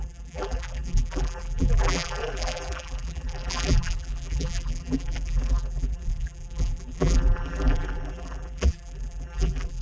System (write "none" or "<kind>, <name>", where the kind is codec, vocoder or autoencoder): vocoder, BigVGAN v2